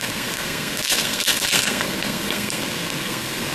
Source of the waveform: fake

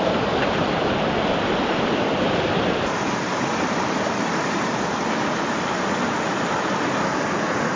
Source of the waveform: fake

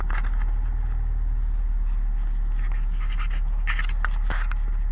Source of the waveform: real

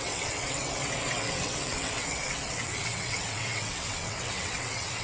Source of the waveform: fake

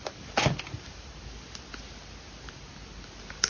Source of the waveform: real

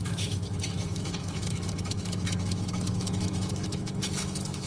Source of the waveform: fake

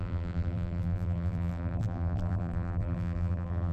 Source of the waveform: fake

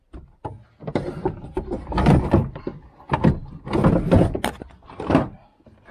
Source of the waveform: real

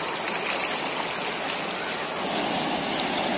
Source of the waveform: real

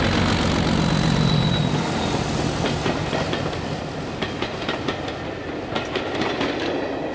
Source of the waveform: real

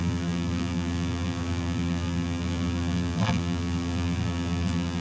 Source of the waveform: fake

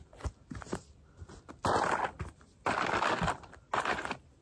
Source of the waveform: real